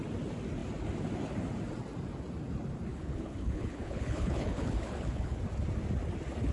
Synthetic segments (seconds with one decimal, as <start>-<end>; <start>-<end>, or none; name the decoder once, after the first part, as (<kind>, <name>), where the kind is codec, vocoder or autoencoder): 2.9-5.4 (codec, HILCodec)